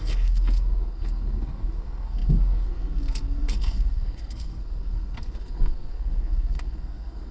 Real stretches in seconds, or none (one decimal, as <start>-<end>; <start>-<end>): none